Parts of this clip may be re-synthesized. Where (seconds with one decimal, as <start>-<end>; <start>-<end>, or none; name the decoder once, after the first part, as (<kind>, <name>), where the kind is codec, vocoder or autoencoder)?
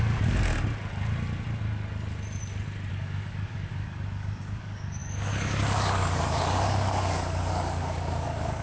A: 0.0-0.5 (codec, DAC); 2.9-8.6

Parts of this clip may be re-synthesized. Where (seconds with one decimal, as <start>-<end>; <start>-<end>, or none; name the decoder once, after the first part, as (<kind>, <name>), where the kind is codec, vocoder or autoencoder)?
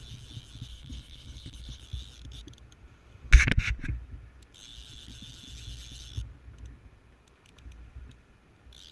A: 0.7-1.8 (codec, HILCodec)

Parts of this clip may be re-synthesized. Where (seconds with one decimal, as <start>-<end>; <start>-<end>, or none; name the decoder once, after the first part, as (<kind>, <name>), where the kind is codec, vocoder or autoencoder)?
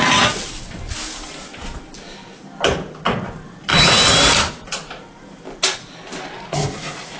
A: none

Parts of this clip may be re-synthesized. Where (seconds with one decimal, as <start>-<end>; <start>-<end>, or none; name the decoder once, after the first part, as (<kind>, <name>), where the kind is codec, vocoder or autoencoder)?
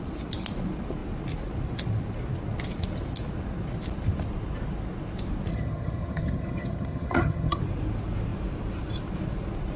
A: 5.5-7.6 (vocoder, HiFi-GAN)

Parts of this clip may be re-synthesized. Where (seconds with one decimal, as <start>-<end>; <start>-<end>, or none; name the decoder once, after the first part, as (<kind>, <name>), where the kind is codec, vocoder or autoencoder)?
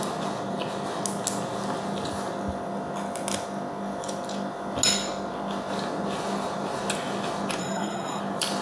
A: 7.6-8.2 (codec, SNAC)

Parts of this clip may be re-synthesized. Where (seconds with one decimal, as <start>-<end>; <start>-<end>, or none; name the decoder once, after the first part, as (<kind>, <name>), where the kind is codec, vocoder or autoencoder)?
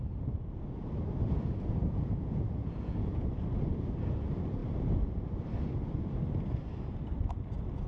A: 1.8-3.4 (vocoder, Vocos)